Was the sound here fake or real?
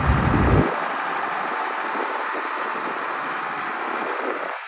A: real